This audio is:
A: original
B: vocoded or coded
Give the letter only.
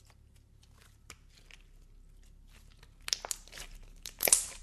A